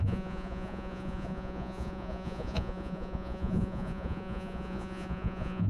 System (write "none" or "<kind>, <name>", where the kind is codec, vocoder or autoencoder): vocoder, Vocos